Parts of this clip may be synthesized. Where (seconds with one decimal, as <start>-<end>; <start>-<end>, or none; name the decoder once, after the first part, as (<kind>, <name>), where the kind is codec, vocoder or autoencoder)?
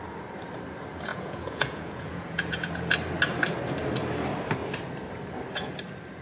1.1-2.7 (vocoder, Vocos)